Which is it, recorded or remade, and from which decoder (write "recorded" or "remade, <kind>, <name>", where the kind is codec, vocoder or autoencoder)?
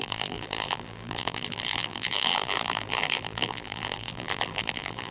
remade, vocoder, BigVGAN v2